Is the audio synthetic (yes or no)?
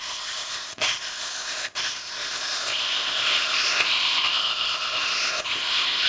yes